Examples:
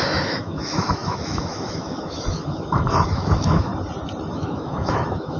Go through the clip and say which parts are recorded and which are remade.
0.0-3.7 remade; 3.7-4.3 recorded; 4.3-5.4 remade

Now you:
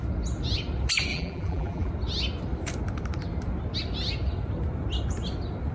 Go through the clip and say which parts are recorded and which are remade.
0.0-1.1 recorded; 1.1-1.9 remade; 1.9-5.7 recorded